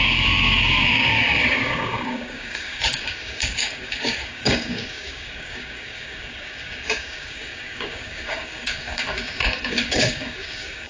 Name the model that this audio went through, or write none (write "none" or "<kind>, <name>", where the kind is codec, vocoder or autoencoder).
codec, DAC